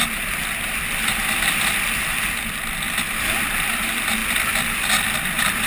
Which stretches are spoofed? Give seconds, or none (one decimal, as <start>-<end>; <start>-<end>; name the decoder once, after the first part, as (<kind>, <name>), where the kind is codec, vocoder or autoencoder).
0.0-5.7 (vocoder, BigVGAN v2)